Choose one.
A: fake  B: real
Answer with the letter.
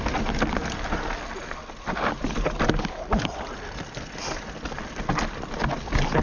B